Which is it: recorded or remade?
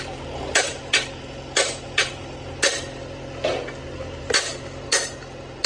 recorded